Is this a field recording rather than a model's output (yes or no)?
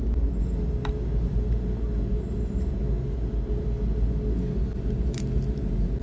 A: yes